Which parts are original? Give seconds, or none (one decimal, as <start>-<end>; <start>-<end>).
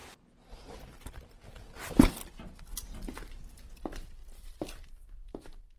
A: 0.0-3.5; 4.2-4.8